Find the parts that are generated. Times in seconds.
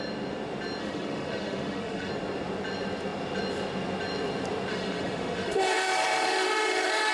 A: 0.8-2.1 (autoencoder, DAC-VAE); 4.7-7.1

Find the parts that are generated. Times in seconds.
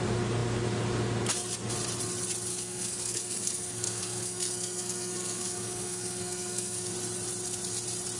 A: 2.5-6.9 (codec, SNAC)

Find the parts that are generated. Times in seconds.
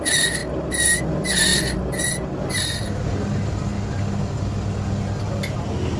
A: none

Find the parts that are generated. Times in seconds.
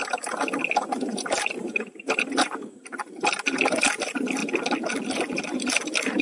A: 1.1-2.8 (vocoder, BigVGAN v2)